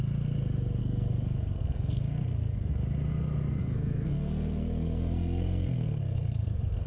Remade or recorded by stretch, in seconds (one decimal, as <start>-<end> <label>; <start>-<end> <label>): 0.0-0.8 recorded; 0.8-2.7 remade; 2.7-3.6 recorded; 3.6-6.9 remade

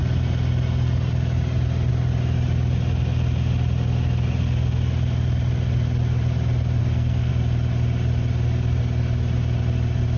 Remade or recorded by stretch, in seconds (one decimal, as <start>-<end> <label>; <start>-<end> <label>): 0.0-6.8 recorded; 6.8-7.3 remade; 7.3-10.2 recorded

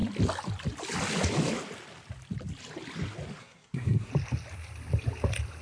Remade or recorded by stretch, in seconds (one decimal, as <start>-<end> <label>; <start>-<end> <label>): 0.0-3.4 recorded; 3.4-4.1 remade; 4.1-5.6 recorded

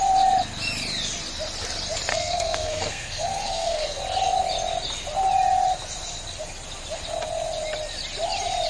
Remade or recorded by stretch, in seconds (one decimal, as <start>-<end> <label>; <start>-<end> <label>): 0.0-2.1 recorded; 2.1-4.0 remade; 4.0-8.7 recorded

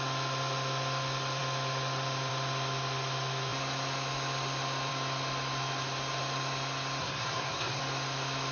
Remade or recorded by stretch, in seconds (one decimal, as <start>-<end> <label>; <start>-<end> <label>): 0.0-7.0 recorded; 7.0-7.8 remade; 7.8-8.5 recorded

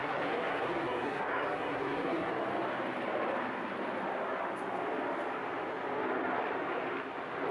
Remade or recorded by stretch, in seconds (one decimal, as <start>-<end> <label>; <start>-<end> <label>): 0.0-2.3 remade; 2.3-7.5 recorded

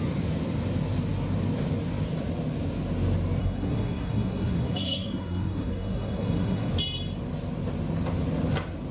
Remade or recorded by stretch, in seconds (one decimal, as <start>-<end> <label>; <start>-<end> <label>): 0.0-3.4 recorded; 3.4-6.7 remade; 6.7-8.9 recorded

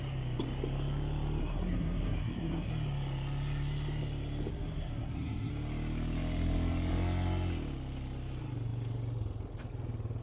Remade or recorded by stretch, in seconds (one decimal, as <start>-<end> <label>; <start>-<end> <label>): 0.0-1.4 recorded; 1.4-2.7 remade; 2.7-4.5 recorded; 4.5-5.5 remade; 5.5-10.2 recorded